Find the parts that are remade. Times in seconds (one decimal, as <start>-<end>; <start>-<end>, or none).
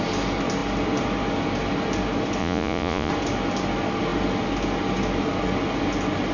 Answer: 2.4-3.1